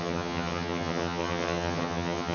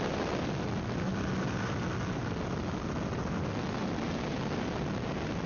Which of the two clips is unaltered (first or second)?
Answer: second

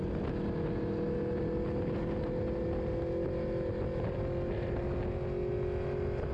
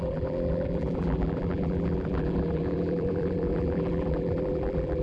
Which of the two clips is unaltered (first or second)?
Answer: first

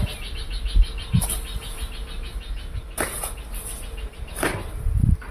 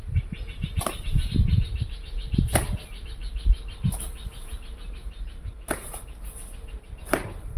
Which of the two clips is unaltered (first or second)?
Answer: first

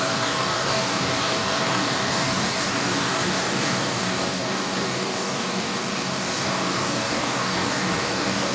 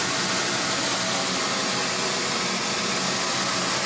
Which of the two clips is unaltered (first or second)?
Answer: second